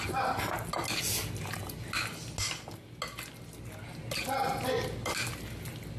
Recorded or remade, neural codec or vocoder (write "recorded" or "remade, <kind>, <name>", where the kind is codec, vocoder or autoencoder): recorded